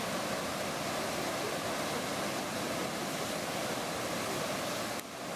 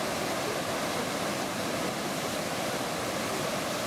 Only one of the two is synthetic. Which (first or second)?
second